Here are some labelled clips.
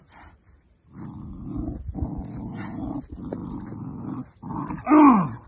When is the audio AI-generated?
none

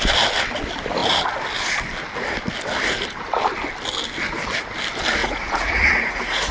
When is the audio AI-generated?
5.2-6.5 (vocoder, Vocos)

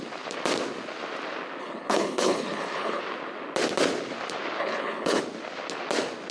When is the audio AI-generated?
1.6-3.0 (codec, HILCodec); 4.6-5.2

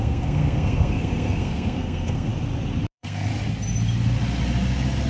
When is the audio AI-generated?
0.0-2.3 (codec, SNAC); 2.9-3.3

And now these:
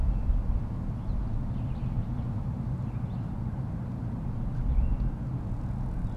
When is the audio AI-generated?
2.0-3.5 (vocoder, BigVGAN v2)

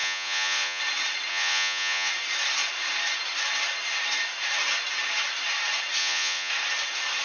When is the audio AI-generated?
0.0-0.8 (vocoder, Vocos); 1.3-2.1; 6.0-6.5

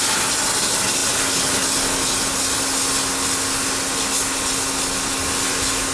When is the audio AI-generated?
none